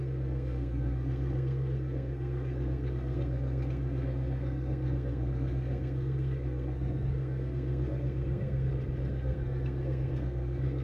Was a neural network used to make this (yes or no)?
yes